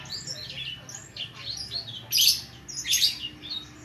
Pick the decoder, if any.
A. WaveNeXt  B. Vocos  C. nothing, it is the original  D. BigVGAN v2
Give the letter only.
C